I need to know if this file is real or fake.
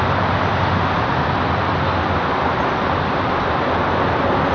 real